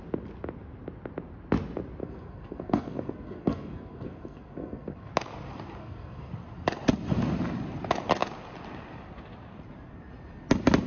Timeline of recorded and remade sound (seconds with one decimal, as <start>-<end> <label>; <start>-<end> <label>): 0.0-2.0 recorded; 2.0-5.1 remade; 5.1-5.8 recorded; 5.8-6.3 remade; 6.3-10.9 recorded